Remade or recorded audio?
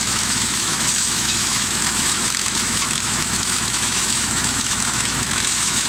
remade